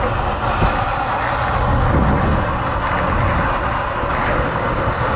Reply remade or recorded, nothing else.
recorded